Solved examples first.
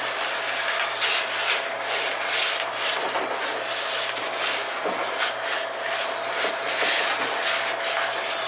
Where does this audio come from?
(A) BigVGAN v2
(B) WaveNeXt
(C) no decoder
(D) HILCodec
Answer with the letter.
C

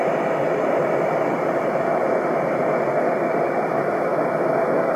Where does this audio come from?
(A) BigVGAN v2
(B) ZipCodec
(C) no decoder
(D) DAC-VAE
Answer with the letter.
C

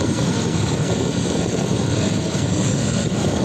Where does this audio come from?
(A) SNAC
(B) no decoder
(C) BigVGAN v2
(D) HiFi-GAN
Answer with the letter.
A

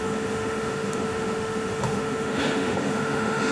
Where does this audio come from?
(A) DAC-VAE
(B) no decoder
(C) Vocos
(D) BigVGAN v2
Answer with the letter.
A